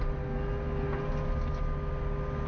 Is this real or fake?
real